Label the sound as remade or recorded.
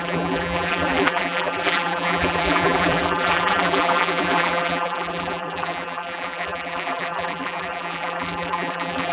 remade